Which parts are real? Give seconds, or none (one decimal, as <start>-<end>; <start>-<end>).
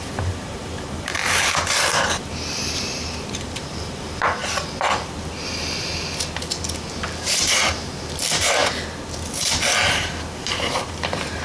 4.4-6.9; 8.6-9.9